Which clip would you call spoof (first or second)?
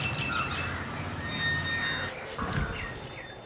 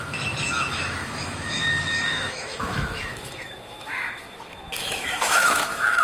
second